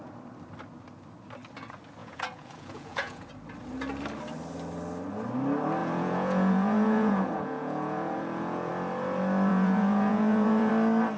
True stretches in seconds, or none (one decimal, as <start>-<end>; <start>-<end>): 0.0-2.0; 3.3-5.8; 8.7-9.5; 10.7-11.2